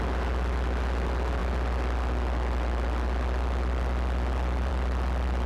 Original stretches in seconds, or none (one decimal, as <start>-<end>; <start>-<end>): 0.0-5.5